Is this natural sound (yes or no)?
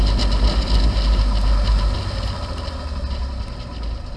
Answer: yes